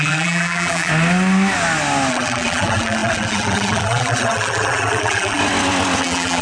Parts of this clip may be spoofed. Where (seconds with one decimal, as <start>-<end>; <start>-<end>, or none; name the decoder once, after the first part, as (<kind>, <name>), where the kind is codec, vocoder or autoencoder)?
0.0-0.9 (vocoder, BigVGAN v2); 2.1-5.4; 6.0-6.4